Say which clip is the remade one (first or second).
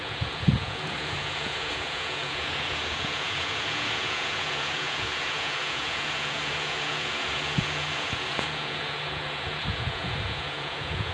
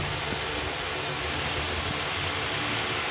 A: first